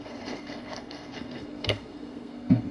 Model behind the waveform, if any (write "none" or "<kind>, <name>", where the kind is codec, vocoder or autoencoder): codec, SNAC